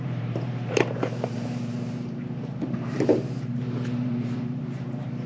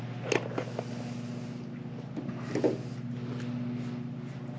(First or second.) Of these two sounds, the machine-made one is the first